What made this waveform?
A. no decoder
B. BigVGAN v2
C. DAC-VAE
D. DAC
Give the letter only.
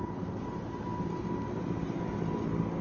A